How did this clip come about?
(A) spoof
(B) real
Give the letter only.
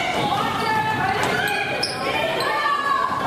A